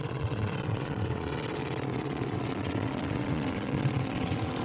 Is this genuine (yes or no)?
no